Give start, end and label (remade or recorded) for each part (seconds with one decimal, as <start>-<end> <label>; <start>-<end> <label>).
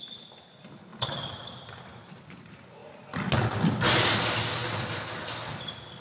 0.0-6.0 recorded